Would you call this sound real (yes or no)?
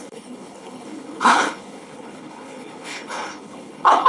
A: no